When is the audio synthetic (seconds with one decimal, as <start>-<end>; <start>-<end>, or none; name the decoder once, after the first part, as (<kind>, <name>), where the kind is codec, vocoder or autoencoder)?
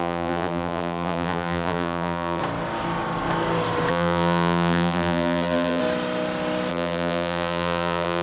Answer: 0.0-2.4 (vocoder, BigVGAN v2); 3.9-5.8; 6.7-8.2